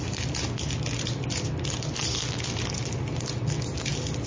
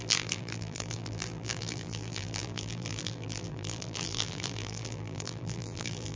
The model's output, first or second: second